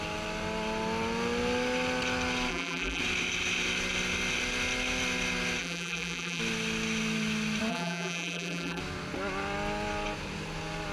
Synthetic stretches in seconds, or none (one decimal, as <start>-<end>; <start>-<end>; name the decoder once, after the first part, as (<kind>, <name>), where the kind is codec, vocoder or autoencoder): 2.5-3.0 (vocoder, BigVGAN v2); 5.6-6.4; 7.7-8.8